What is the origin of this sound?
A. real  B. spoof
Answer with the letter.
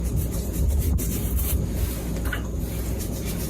B